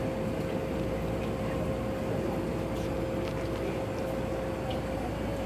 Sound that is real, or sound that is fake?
real